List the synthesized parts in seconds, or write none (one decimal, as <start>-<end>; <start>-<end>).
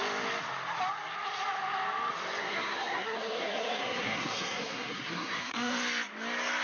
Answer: 2.4-5.7